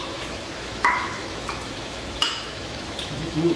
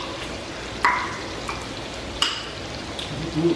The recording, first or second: second